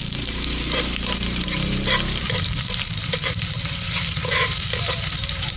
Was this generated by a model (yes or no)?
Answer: yes